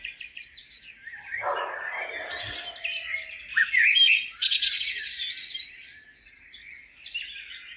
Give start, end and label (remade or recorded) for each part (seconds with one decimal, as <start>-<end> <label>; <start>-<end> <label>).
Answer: 0.0-7.8 recorded